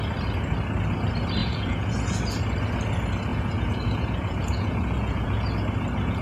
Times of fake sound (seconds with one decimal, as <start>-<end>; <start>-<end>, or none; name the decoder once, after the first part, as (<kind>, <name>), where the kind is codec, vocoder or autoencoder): 1.4-2.0 (vocoder, Vocos); 3.3-5.5